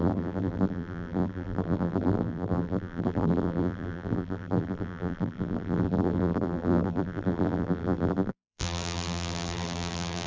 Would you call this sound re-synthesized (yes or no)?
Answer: yes